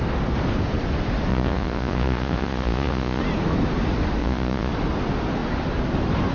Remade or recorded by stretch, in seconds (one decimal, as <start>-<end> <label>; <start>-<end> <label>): 0.0-1.3 recorded; 1.3-3.2 remade; 3.2-4.2 recorded; 4.2-4.7 remade; 4.7-6.3 recorded